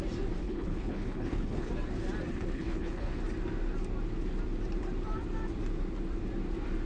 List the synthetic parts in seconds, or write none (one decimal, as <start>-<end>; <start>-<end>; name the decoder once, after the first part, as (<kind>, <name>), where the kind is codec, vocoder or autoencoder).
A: 0.4-1.7 (codec, HILCodec); 2.3-3.2

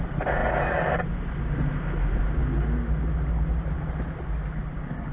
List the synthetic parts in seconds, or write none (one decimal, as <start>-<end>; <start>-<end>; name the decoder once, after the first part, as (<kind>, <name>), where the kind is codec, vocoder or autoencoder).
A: none

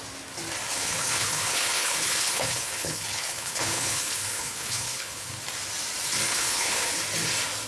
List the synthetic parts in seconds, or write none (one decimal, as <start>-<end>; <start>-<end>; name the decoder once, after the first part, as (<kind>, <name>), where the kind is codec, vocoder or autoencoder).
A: 0.7-5.3 (codec, HILCodec); 6.3-7.0

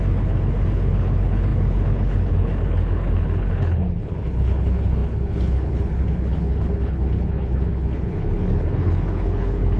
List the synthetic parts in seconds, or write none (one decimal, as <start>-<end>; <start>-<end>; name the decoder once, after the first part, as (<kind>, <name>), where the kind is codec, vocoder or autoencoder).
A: 0.0-9.8 (codec, HILCodec)

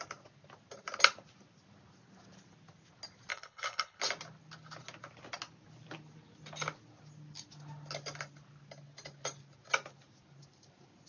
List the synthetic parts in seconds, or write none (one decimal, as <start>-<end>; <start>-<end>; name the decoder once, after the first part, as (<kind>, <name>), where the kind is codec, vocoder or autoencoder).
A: 3.3-4.0 (codec, HILCodec)

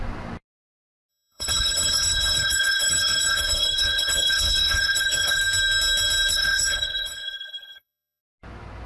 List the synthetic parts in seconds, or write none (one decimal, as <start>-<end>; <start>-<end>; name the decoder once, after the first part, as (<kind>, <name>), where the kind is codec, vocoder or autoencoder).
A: 1.1-5.4 (codec, HILCodec); 6.3-8.2

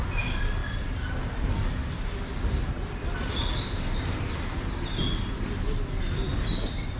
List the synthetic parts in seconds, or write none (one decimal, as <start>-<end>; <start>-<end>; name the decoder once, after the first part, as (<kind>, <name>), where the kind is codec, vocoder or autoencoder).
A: none